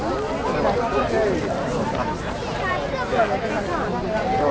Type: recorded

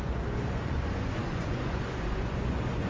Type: remade